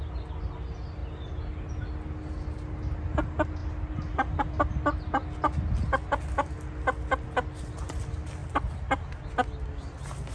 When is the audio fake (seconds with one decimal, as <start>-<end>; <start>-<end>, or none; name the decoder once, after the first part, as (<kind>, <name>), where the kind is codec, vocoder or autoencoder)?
none